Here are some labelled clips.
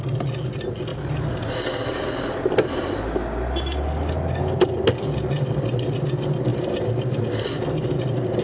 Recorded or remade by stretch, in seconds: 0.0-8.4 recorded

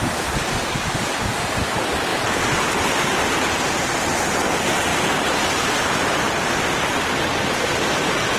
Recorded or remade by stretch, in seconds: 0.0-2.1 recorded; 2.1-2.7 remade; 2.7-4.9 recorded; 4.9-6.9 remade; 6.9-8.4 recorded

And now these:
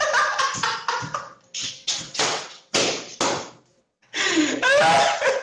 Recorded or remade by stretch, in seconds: 0.0-1.6 recorded; 1.6-2.8 remade; 2.8-3.7 recorded; 3.7-4.4 remade; 4.4-5.4 recorded